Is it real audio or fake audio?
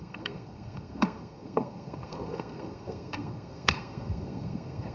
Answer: fake